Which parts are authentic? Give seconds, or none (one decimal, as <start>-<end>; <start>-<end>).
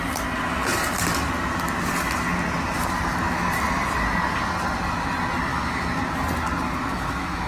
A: 0.0-5.5; 6.0-6.8